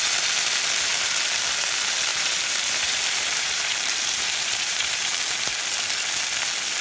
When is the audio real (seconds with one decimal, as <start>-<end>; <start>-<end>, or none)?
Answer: 0.0-2.1; 5.6-6.8